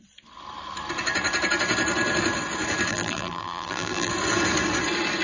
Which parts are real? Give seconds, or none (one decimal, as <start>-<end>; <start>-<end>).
0.0-2.9; 4.1-5.2